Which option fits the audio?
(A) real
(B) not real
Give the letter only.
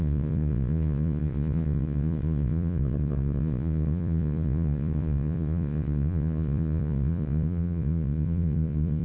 B